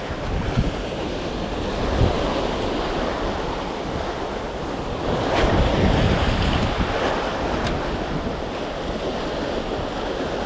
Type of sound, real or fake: real